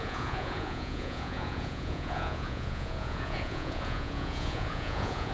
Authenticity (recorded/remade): remade